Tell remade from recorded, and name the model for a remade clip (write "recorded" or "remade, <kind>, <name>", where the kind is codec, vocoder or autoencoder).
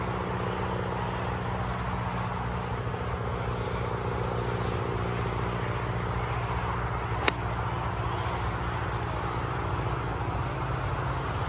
recorded